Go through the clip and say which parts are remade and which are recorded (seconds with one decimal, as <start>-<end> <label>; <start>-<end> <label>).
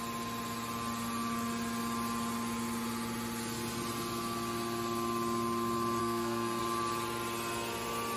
0.0-6.0 recorded; 6.0-6.6 remade; 6.6-8.2 recorded